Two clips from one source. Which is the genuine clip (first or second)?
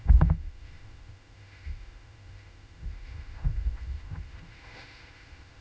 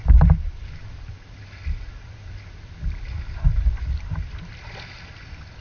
second